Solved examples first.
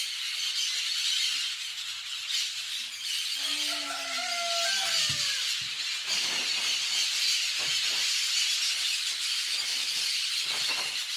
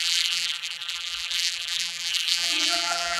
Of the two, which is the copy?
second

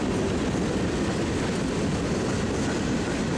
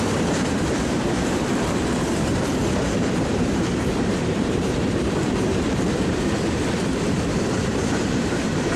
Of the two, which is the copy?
second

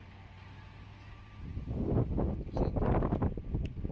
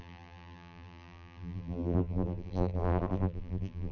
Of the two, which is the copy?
second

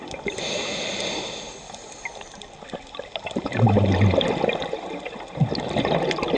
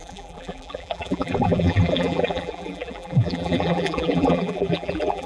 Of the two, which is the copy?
second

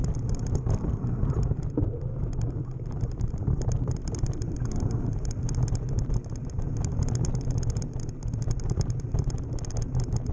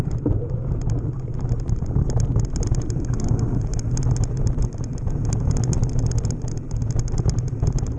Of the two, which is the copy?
first